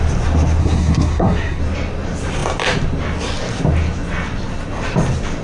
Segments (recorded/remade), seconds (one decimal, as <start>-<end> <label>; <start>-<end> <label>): 0.0-0.6 recorded; 0.6-1.6 remade; 1.6-5.4 recorded